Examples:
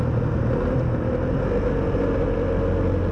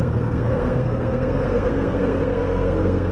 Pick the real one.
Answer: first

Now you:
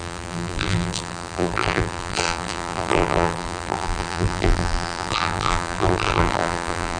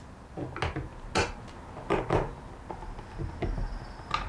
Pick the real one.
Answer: second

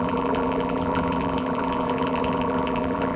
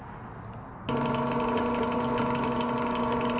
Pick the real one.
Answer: second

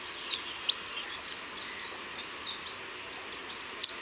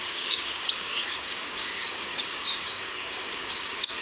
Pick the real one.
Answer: first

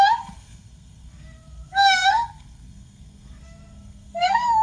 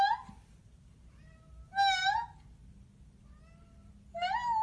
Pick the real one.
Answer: second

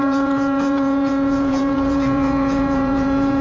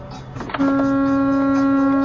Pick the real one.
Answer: second